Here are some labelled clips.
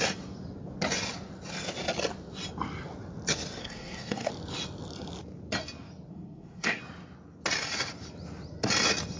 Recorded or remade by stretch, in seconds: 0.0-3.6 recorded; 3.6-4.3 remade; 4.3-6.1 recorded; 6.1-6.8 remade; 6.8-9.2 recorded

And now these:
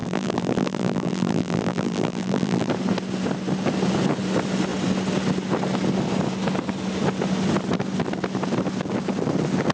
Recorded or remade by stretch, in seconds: 0.0-2.7 remade; 2.7-9.7 recorded